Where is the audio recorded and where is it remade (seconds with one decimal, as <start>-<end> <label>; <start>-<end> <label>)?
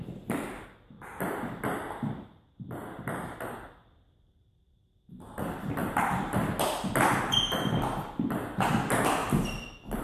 0.0-10.0 recorded